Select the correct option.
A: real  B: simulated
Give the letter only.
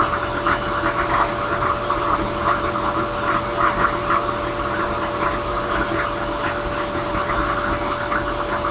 A